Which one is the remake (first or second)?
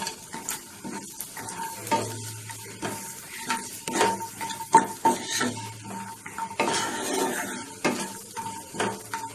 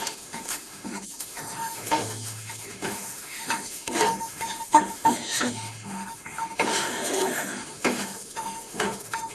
second